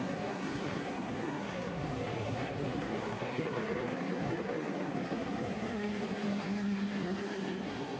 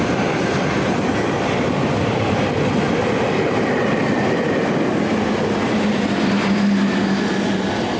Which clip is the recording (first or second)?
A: second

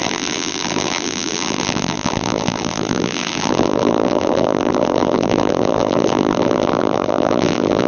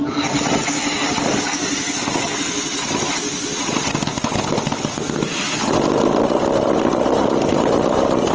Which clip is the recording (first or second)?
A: second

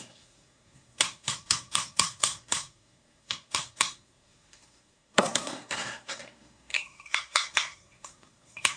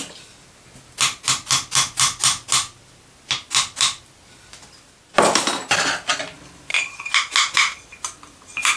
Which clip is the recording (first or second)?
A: second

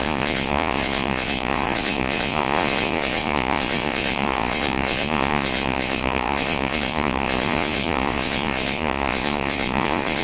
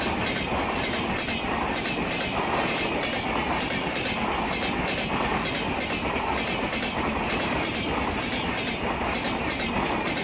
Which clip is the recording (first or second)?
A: second